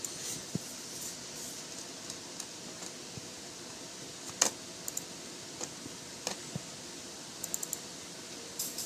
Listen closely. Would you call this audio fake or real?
real